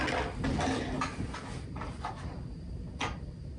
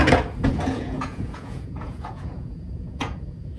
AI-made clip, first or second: second